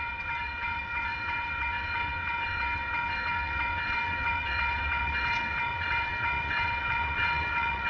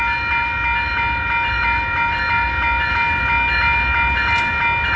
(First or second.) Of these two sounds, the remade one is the first